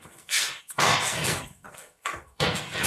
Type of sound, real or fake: fake